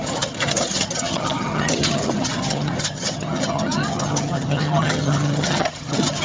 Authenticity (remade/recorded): remade